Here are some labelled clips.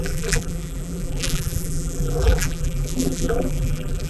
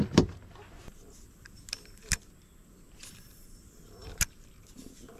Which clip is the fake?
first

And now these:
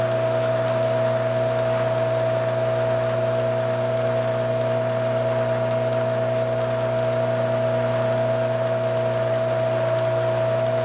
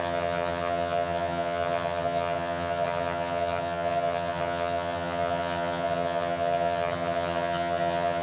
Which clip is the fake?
second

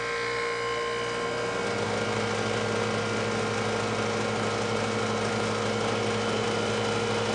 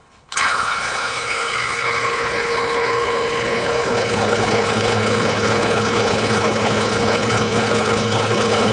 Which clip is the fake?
second